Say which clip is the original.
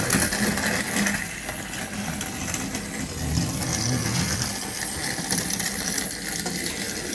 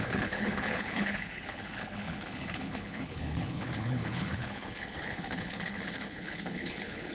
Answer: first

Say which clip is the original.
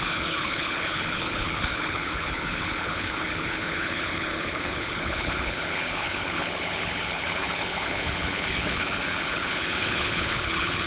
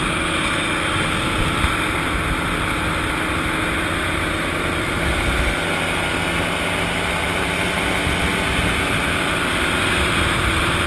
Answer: second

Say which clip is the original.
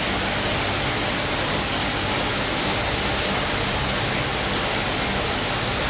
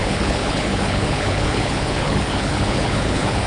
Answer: first